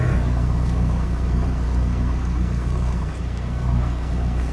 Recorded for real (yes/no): no